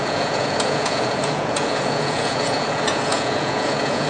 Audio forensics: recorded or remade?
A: remade